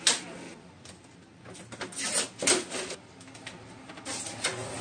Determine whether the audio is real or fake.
real